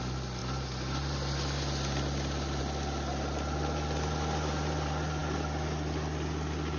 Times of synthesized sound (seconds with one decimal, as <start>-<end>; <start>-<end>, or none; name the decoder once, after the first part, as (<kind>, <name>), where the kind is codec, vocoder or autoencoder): none